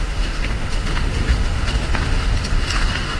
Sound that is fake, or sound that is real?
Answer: fake